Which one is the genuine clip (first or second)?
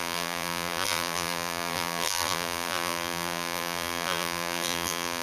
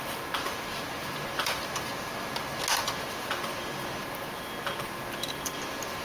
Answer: second